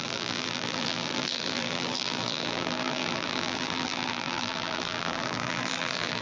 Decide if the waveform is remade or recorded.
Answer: remade